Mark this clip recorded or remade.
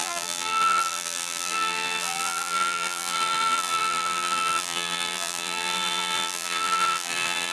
remade